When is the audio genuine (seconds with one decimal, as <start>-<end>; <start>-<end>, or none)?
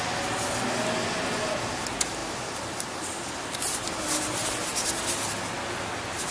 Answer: 0.0-6.3